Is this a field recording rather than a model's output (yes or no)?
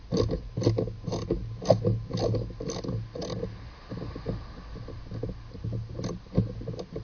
yes